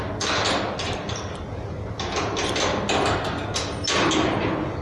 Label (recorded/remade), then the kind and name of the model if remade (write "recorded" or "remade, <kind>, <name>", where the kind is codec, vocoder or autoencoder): recorded